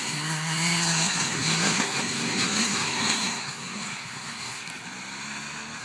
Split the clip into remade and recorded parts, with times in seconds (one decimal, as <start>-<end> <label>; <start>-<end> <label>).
0.0-4.7 remade; 4.7-5.8 recorded